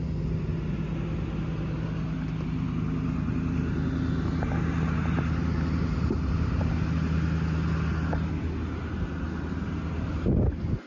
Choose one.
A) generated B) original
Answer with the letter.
B